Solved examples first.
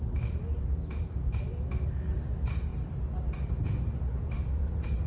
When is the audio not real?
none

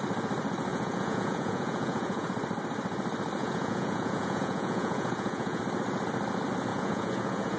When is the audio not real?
0.7-2.3; 3.4-5.6; 6.7-7.6

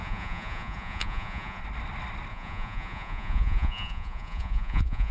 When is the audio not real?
0.0-1.6; 2.3-5.1